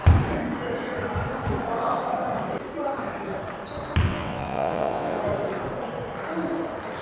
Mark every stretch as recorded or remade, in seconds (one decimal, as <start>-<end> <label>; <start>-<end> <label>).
0.0-4.1 recorded; 4.1-5.2 remade; 5.2-7.0 recorded